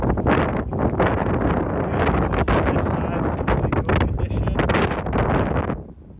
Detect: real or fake real